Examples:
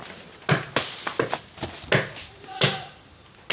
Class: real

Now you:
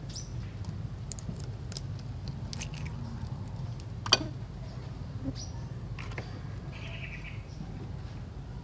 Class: real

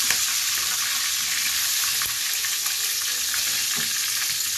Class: real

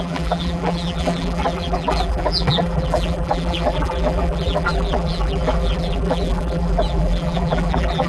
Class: fake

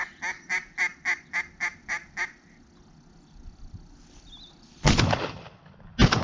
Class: real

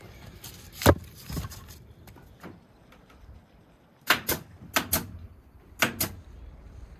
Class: real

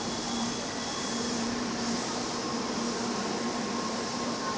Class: fake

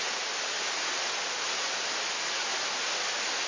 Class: real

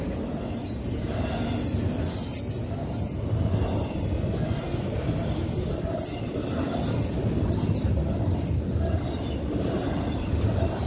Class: real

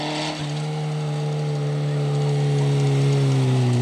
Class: real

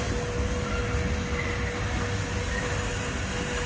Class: real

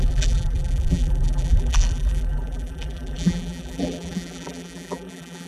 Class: fake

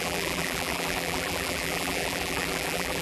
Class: fake